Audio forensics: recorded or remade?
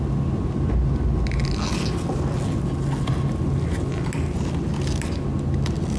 recorded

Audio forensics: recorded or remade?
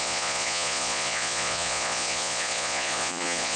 remade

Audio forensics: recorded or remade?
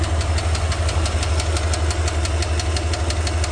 recorded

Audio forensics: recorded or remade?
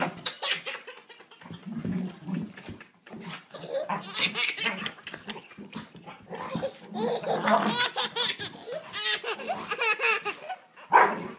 recorded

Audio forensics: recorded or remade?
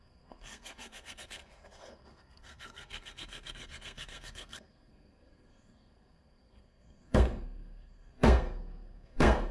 remade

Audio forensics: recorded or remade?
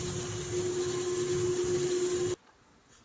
recorded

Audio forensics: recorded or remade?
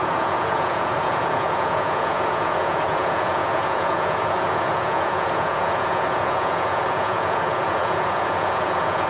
remade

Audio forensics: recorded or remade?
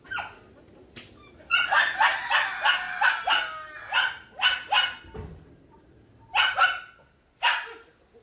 recorded